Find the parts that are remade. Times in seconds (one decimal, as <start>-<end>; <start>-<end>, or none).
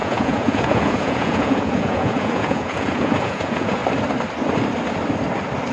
0.0-3.8